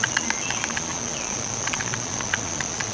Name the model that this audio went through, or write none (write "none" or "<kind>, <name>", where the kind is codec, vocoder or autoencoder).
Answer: vocoder, Vocos